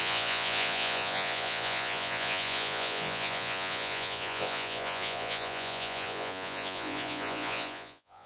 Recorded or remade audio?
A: remade